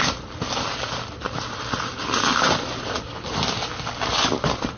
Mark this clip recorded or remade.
recorded